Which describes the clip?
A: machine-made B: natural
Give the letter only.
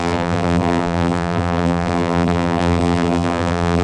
A